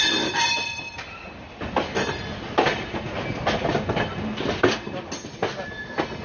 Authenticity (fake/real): real